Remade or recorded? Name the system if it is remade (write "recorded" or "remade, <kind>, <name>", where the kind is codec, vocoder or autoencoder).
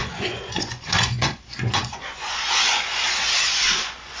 remade, vocoder, Vocos